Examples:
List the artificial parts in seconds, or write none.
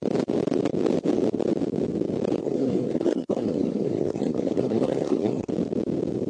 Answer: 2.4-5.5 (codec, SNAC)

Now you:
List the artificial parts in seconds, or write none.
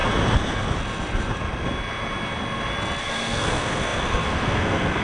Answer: 3.0-5.0 (codec, SNAC)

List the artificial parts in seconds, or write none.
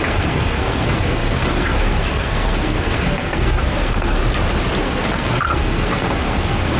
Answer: 0.0-4.2 (codec, SNAC); 4.8-6.8